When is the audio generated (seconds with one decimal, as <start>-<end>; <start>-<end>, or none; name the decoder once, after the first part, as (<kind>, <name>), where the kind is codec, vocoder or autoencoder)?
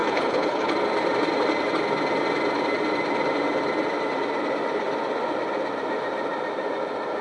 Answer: 0.0-0.7 (codec, HILCodec)